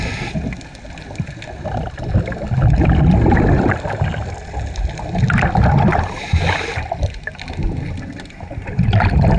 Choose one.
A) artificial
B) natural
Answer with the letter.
B